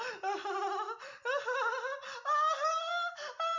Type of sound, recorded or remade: recorded